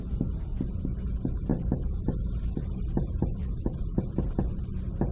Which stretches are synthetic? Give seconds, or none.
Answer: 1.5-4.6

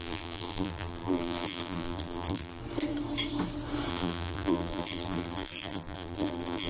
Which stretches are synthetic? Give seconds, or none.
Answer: 0.0-2.6; 3.9-6.7

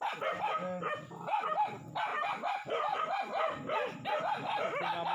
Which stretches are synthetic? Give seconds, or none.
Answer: 2.1-4.2

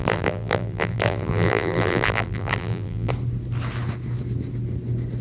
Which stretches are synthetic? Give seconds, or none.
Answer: 0.0-3.1

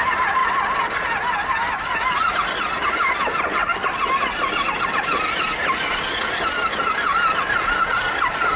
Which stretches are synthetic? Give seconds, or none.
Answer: 0.0-0.4; 3.1-3.6; 7.0-8.6

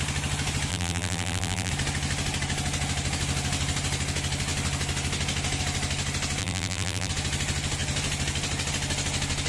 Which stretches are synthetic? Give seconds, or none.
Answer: 0.7-1.7; 6.4-7.1

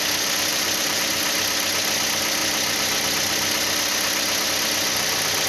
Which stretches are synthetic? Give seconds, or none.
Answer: 0.5-1.0